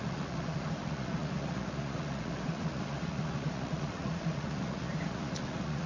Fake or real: fake